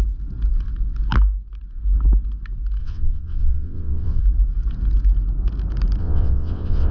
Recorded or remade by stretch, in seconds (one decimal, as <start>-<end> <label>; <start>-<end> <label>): 0.0-2.8 recorded; 2.8-4.2 remade; 4.2-6.0 recorded; 6.0-6.9 remade